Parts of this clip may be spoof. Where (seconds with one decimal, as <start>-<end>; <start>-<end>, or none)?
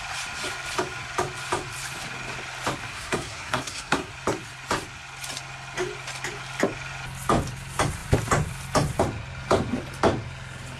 2.9-4.1